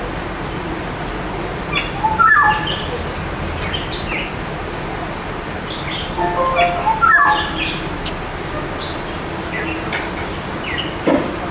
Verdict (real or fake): real